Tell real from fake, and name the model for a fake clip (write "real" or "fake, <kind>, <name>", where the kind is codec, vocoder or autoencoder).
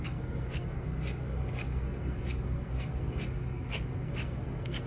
fake, codec, SNAC